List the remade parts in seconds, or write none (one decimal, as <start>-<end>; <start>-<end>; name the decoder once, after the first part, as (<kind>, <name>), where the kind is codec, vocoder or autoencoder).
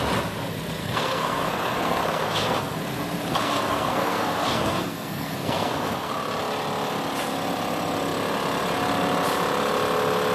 0.8-2.8 (codec, SNAC); 3.3-6.1